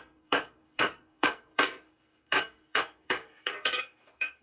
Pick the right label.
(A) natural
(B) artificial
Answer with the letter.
B